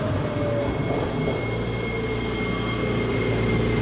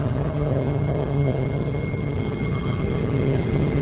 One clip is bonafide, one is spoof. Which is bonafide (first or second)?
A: first